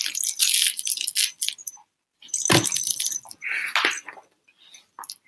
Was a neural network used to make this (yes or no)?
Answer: no